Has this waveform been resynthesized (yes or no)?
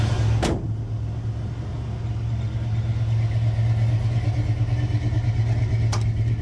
no